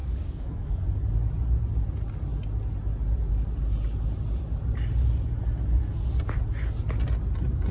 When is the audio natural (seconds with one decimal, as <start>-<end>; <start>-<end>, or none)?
0.8-7.7